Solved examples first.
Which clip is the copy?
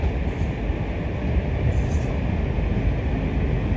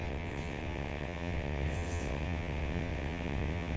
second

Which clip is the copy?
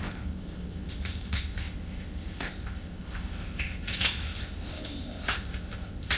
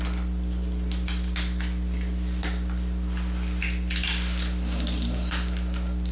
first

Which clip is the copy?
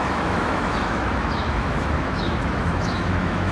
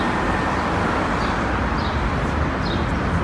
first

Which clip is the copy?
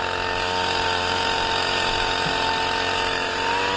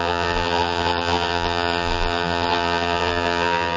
second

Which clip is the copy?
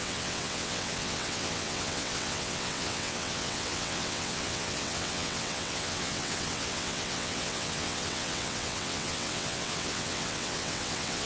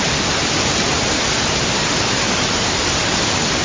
first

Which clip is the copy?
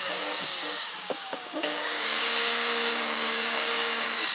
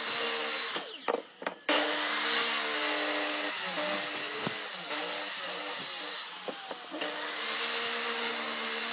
first